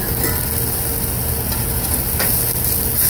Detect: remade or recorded recorded